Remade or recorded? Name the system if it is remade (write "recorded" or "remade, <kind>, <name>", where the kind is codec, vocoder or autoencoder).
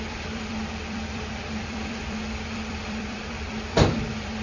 remade, vocoder, BigVGAN v2